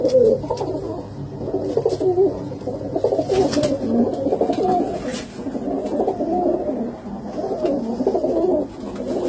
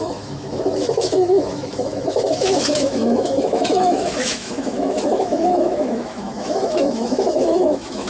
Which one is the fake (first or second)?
second